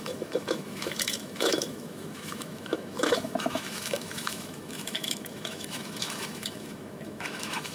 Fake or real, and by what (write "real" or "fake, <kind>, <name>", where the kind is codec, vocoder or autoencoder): fake, autoencoder, DAC-VAE